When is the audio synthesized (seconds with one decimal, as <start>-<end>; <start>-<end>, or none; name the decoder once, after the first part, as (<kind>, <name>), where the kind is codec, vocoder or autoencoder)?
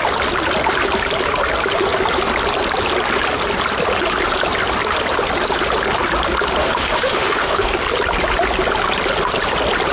6.6-7.7 (autoencoder, DAC-VAE)